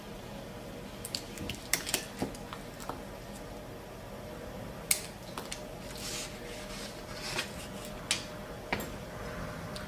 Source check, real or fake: real